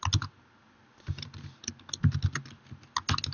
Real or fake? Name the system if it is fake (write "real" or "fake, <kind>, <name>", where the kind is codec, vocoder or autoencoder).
real